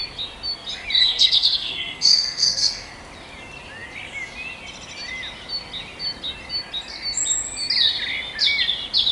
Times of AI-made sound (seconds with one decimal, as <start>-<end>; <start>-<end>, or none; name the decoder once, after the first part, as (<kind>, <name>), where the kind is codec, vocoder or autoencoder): 1.0-2.9 (codec, SNAC)